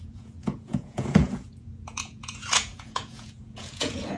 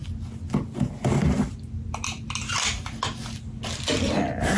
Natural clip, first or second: second